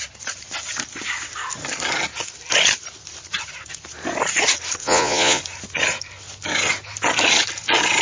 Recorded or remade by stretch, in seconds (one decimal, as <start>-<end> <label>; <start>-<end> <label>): 0.0-4.8 recorded; 4.8-5.4 remade; 5.4-8.0 recorded